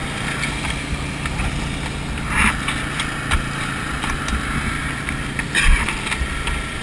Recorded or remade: recorded